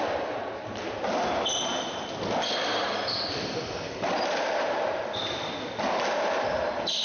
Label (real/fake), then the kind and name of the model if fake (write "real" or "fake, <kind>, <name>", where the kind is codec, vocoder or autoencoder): real